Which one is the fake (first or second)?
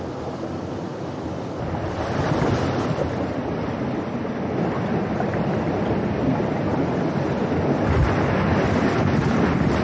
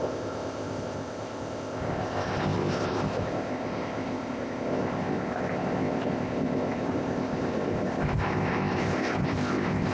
second